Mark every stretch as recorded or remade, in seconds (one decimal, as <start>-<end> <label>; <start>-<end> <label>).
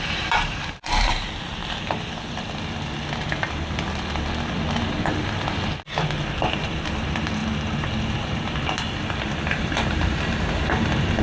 0.0-1.6 remade; 1.6-6.3 recorded; 6.3-7.4 remade; 7.4-9.6 recorded; 9.6-11.2 remade